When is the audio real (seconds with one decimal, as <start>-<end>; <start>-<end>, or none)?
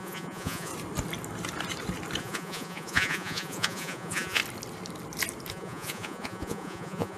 0.7-2.2; 4.4-5.5